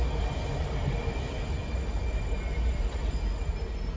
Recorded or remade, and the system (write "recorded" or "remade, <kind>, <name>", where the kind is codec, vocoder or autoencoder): recorded